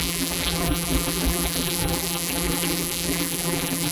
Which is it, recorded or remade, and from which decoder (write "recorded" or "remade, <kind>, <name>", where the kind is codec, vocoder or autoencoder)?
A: remade, vocoder, BigVGAN v2